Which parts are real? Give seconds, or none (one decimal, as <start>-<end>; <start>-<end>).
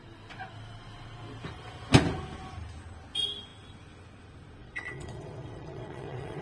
0.0-4.6